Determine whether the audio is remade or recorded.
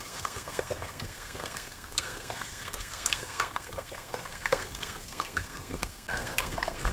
remade